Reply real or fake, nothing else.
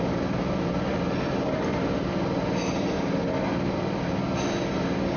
real